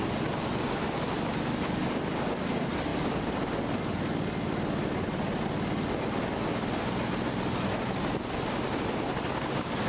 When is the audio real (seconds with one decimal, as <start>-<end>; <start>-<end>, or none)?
0.0-9.9